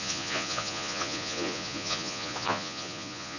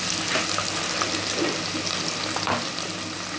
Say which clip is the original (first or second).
second